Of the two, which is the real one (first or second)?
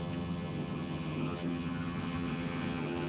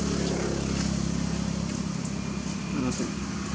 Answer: second